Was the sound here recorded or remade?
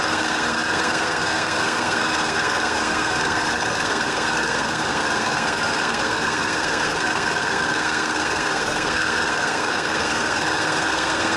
remade